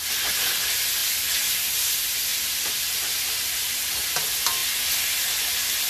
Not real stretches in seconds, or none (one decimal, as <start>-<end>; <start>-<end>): 2.3-3.9